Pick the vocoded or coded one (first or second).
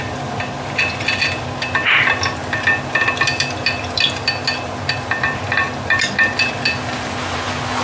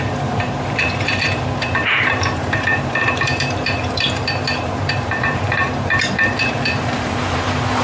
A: second